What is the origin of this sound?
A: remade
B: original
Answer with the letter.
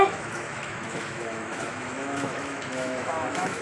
A